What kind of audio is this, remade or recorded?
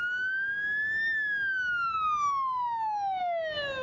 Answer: recorded